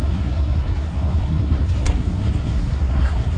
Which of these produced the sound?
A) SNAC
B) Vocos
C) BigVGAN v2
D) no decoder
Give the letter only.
A